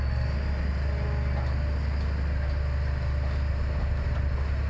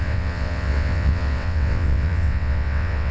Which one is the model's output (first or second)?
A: second